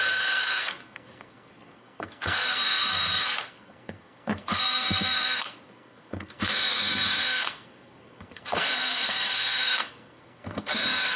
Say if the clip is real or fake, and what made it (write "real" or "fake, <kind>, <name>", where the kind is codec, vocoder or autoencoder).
fake, codec, SNAC